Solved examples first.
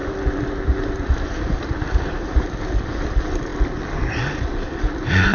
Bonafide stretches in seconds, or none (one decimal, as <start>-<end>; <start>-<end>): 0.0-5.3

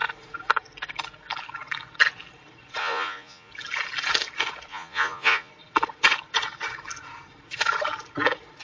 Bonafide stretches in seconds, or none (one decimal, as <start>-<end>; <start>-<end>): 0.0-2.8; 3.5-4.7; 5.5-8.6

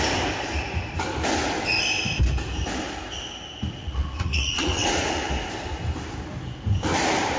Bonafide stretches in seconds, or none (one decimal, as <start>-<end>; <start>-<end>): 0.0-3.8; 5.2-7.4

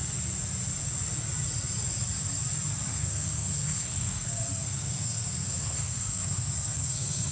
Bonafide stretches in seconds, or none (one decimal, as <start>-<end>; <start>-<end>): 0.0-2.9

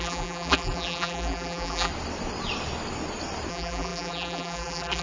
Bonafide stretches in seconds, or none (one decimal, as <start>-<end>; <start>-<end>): 1.9-3.5

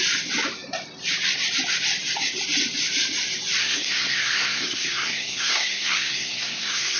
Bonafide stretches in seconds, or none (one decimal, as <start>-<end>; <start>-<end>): 0.0-3.6